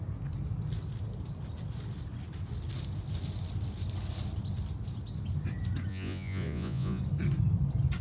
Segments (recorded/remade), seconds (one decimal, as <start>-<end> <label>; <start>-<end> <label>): 0.0-5.9 recorded; 5.9-7.0 remade; 7.0-8.0 recorded